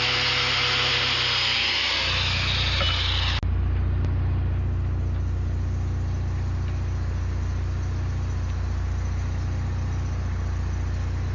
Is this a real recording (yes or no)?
yes